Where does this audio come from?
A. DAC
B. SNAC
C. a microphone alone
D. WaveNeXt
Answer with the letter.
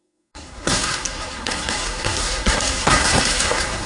B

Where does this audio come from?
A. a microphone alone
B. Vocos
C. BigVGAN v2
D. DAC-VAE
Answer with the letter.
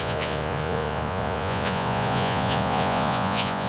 B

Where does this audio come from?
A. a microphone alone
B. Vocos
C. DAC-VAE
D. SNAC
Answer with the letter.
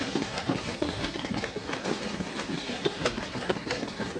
D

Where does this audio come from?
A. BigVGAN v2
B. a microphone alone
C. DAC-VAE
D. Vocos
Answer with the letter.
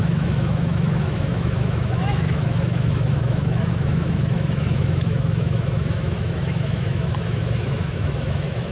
C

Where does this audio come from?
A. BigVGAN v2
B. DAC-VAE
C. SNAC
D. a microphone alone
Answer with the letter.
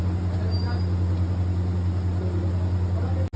D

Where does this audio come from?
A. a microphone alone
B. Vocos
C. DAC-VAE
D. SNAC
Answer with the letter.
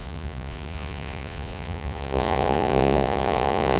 B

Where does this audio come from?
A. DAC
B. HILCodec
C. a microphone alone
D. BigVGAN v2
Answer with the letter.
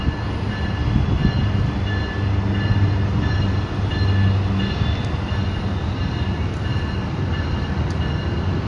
C